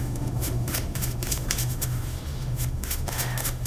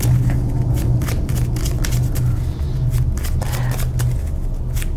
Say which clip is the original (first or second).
second